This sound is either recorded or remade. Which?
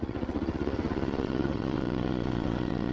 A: remade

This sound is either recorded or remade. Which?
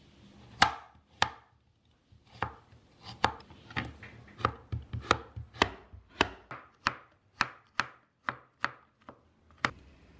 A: recorded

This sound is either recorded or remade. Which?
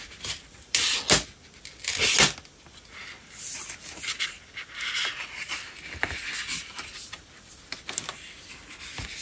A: recorded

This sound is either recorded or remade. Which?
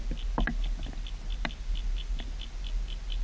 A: recorded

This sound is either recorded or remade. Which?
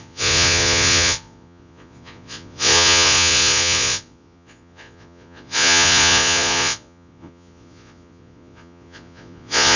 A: remade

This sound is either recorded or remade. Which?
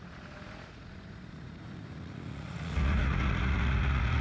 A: remade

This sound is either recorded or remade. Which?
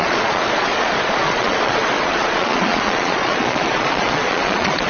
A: remade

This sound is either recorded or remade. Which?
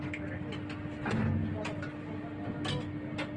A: recorded